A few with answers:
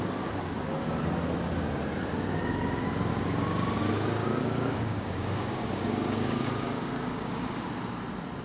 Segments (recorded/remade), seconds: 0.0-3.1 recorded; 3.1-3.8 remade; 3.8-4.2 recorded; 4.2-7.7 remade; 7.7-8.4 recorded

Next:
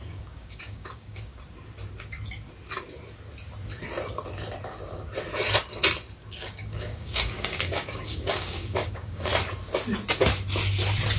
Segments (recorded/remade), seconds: 0.0-1.3 remade; 1.3-6.2 recorded; 6.2-9.3 remade; 9.3-11.2 recorded

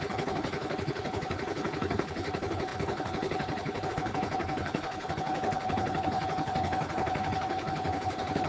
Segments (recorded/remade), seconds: 0.0-8.5 remade

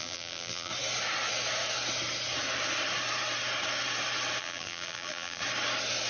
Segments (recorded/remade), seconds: 0.0-0.7 remade; 0.7-4.4 recorded; 4.4-5.4 remade; 5.4-6.1 recorded

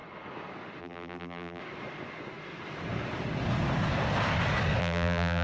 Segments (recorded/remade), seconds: 0.0-0.8 recorded; 0.8-1.6 remade; 1.6-4.8 recorded; 4.8-5.4 remade